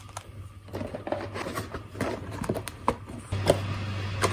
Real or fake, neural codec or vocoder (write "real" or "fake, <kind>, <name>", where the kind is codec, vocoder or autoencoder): real